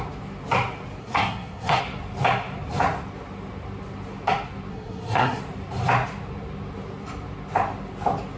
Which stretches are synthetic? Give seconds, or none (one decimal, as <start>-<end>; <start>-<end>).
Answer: 1.0-1.8; 4.7-5.4